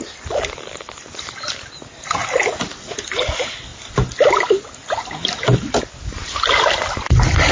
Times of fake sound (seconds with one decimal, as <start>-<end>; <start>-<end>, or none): none